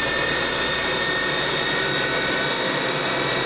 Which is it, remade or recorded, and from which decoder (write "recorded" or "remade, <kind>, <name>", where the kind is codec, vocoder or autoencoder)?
recorded